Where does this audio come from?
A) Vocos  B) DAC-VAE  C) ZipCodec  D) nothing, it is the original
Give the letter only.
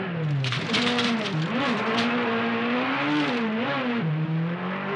D